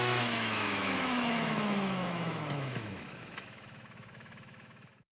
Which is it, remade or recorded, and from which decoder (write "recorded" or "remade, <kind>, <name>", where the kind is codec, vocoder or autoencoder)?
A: remade, autoencoder, DAC-VAE